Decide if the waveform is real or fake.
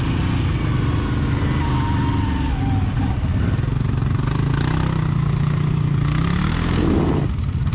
real